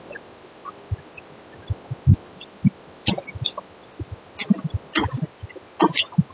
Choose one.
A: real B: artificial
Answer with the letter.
A